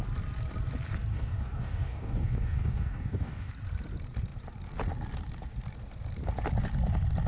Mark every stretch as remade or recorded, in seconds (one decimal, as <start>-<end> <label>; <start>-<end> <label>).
0.0-1.1 recorded; 1.1-3.5 remade; 3.5-7.3 recorded